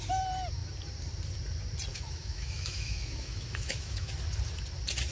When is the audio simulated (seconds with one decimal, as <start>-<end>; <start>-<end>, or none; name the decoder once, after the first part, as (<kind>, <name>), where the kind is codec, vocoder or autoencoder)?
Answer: 1.9-4.1 (autoencoder, DAC-VAE)